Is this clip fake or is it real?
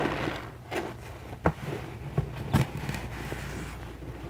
real